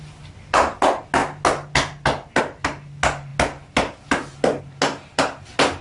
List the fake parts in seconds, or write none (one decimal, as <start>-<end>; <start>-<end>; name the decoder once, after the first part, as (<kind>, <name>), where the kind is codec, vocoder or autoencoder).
none